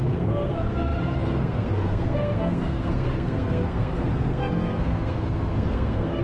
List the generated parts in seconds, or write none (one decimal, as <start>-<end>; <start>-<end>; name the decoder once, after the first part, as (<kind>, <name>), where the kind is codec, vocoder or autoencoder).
0.0-6.2 (codec, SNAC)